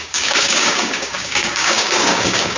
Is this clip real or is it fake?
fake